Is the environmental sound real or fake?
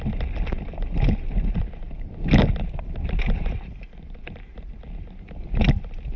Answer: real